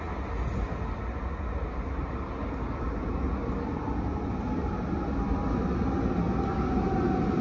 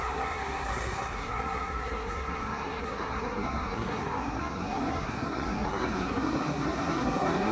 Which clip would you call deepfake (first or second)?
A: second